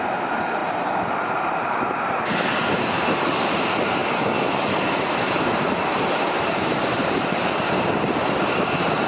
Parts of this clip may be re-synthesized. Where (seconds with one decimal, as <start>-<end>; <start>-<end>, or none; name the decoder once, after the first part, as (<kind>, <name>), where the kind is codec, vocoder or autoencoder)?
0.0-4.0 (vocoder, BigVGAN v2); 4.5-9.1